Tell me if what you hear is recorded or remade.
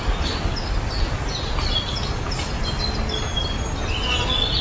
recorded